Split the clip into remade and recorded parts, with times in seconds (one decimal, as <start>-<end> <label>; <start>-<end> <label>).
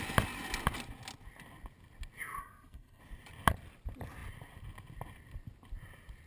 0.0-2.4 recorded; 2.4-3.0 remade; 3.0-6.3 recorded